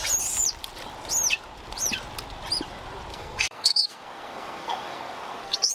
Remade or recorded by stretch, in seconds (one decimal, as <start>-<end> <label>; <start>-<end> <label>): 0.0-3.1 recorded; 3.1-5.7 remade